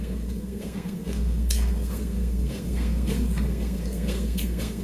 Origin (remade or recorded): remade